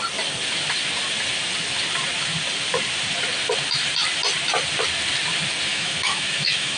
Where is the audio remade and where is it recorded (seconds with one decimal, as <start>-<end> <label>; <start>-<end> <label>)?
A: 0.0-5.7 recorded; 5.7-6.8 remade